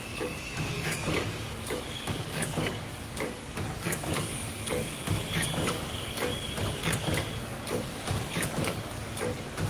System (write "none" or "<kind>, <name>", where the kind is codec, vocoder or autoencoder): codec, DAC